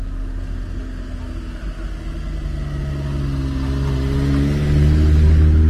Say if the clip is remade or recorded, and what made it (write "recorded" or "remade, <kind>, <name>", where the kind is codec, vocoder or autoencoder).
recorded